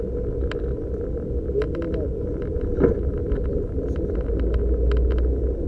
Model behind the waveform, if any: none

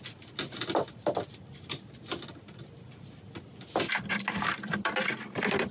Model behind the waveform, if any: none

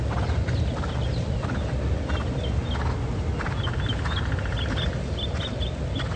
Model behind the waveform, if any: none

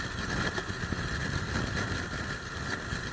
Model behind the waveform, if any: none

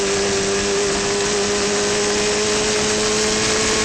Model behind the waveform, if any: none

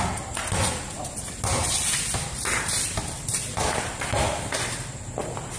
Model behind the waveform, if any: none